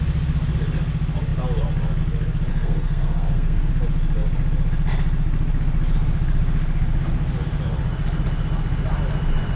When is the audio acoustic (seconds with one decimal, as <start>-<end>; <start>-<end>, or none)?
0.0-2.5; 3.7-9.6